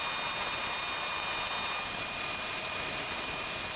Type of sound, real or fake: real